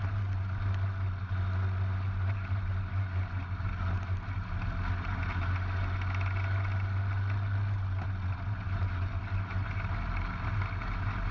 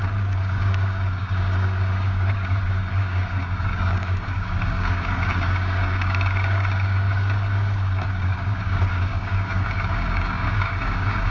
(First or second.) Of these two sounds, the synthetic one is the second